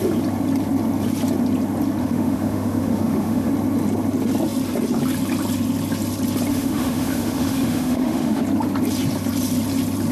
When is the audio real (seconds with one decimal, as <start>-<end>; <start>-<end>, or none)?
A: 0.0-2.0; 3.5-6.5; 8.4-10.1

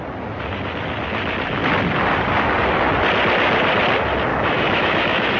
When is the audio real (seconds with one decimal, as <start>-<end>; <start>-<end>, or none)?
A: 0.0-4.3